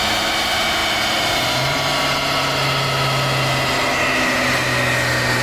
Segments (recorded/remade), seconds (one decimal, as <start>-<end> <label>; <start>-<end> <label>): 0.0-5.4 recorded